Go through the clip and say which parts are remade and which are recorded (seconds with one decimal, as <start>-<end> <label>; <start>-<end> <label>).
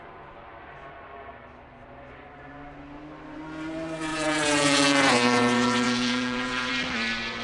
0.0-4.1 recorded; 4.1-6.7 remade; 6.7-7.4 recorded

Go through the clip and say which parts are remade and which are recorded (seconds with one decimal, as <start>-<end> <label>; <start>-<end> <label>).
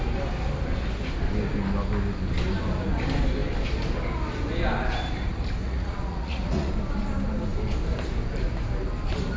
0.0-5.6 recorded; 5.6-6.7 remade; 6.7-9.4 recorded